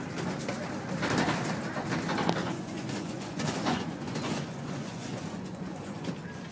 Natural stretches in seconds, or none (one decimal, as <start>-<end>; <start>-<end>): 0.0-2.4; 6.1-6.5